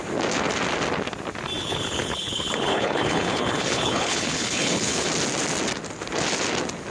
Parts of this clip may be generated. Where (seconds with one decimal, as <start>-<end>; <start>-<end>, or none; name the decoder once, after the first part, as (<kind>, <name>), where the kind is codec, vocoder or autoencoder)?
1.6-5.1 (codec, HILCodec)